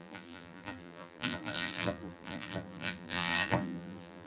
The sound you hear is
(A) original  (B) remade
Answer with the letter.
B